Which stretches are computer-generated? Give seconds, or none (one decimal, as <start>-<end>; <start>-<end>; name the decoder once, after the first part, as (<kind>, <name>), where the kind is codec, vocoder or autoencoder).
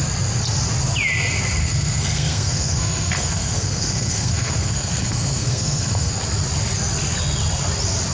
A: 1.6-6.1 (codec, SNAC)